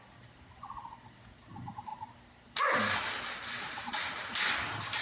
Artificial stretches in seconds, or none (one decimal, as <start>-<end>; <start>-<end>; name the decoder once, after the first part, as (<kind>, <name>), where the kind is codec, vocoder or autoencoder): none